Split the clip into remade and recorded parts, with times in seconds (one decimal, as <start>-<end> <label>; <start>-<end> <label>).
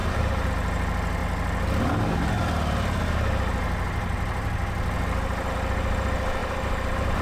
0.0-0.5 remade; 0.5-6.4 recorded; 6.4-7.2 remade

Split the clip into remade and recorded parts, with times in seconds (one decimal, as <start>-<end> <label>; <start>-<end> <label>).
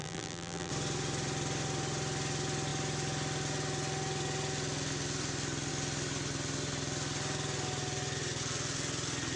0.0-0.7 remade; 0.7-9.4 recorded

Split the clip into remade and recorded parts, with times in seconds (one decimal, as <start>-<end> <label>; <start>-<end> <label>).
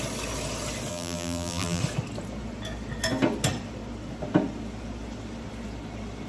0.0-0.9 recorded; 0.9-1.8 remade; 1.8-6.3 recorded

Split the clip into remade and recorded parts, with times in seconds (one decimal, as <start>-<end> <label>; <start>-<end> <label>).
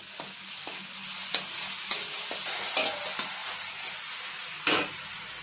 0.0-5.4 recorded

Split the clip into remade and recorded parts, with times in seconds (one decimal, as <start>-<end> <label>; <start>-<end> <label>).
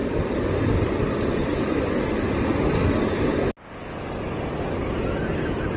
0.0-3.5 remade; 3.5-5.8 recorded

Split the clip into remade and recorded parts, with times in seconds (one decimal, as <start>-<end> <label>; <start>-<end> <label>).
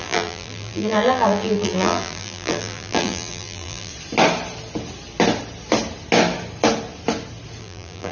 0.0-3.9 remade; 3.9-7.6 recorded; 7.6-8.1 remade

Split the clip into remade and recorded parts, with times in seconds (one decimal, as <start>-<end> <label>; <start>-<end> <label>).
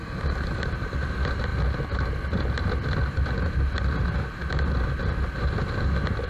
0.0-6.3 recorded